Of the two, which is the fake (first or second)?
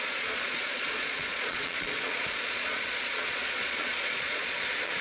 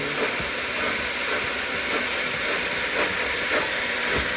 first